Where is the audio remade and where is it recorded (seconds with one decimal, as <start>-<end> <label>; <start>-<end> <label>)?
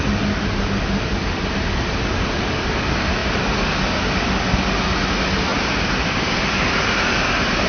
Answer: 0.0-5.5 recorded; 5.5-6.5 remade; 6.5-7.7 recorded